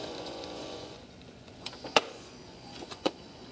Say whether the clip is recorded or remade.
remade